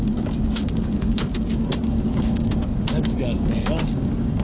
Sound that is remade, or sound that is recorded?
remade